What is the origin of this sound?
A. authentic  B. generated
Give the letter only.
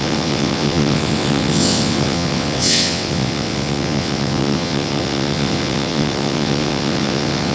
B